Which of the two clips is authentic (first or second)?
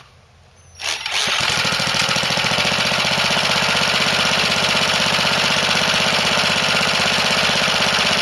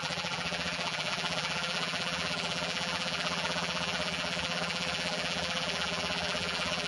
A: first